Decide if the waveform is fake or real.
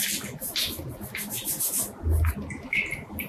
real